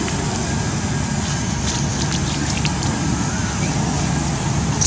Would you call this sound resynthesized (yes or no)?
no